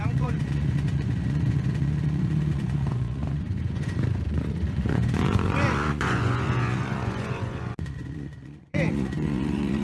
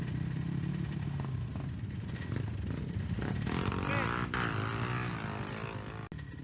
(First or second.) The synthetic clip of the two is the first